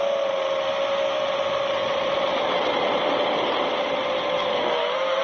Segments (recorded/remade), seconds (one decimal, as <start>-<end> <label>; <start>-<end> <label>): 0.0-1.8 recorded; 1.8-4.3 remade; 4.3-5.2 recorded